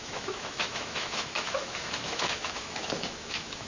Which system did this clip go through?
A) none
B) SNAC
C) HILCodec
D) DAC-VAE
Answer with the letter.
D